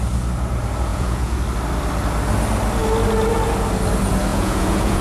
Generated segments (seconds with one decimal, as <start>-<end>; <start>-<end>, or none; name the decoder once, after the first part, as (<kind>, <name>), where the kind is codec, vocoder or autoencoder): 0.9-1.4 (vocoder, Vocos); 4.3-5.0